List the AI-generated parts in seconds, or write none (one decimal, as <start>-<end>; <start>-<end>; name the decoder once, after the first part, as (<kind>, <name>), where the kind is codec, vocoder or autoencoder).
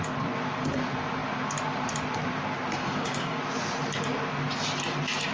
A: 2.8-3.4 (codec, DAC)